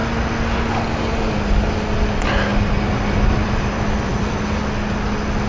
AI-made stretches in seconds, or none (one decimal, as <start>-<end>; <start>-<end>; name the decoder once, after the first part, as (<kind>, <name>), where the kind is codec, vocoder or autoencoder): 2.5-4.6 (vocoder, BigVGAN v2)